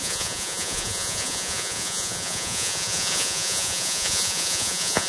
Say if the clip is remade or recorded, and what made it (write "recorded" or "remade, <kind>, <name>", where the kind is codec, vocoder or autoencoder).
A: remade, vocoder, Vocos